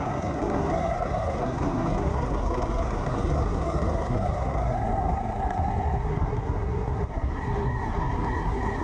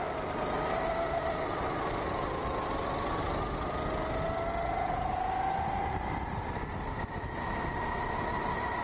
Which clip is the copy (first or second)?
first